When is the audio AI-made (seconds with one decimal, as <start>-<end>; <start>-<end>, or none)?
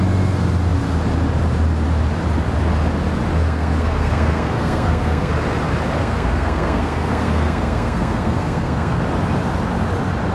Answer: 3.3-5.3; 6.0-9.0